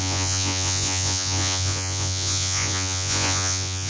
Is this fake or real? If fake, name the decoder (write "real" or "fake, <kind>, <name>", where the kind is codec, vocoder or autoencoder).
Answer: fake, vocoder, Vocos